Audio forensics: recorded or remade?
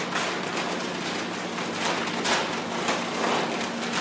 recorded